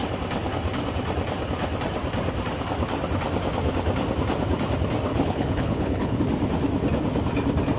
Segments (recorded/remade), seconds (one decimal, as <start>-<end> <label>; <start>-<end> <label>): 0.0-5.1 recorded; 5.1-6.2 remade; 6.2-7.8 recorded